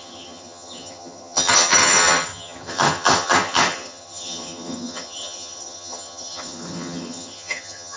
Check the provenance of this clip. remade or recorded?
remade